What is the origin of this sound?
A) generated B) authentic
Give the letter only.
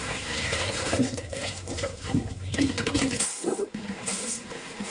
A